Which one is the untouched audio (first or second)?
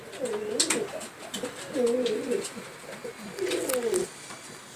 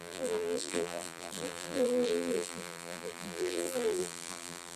first